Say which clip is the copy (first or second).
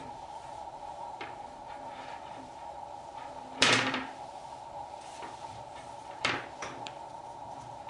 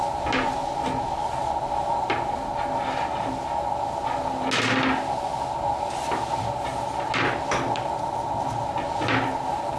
first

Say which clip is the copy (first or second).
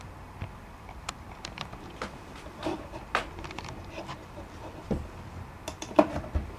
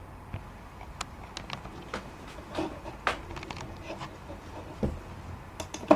first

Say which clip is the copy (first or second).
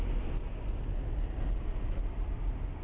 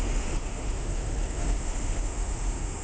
second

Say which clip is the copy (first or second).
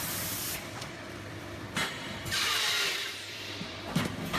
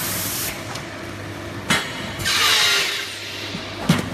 first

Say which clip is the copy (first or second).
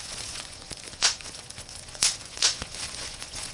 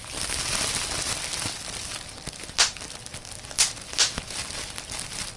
first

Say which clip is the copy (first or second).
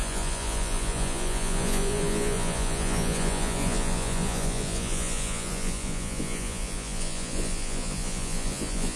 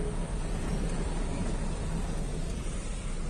first